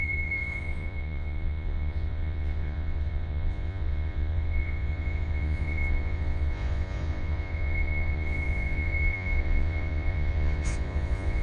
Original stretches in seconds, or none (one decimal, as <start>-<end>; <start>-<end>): none